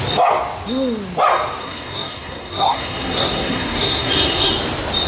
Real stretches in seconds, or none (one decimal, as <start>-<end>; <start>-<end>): 0.0-1.6; 4.5-5.1